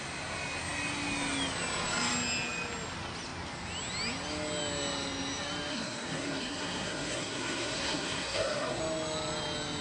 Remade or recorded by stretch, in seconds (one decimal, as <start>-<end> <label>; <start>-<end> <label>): 0.0-5.7 recorded; 5.7-8.8 remade; 8.8-9.8 recorded